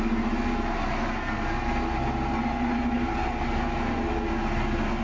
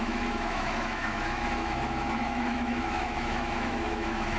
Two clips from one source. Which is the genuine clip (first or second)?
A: first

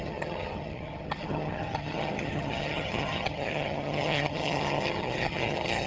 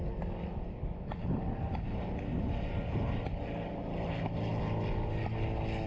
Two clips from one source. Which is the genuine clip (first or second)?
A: second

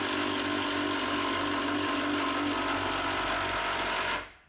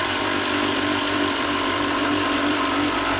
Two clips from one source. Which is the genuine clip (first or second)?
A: first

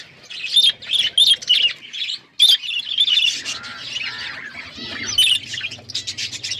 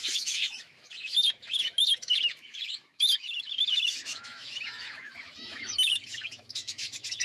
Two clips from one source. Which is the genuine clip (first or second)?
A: first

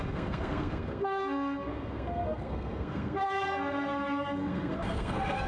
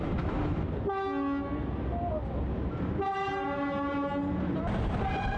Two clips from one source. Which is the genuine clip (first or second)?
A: second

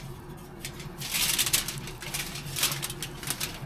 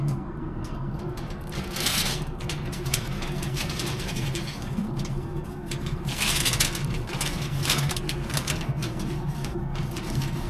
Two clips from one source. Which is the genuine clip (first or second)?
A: first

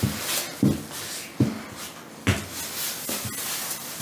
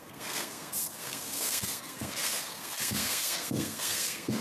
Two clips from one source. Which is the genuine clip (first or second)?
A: first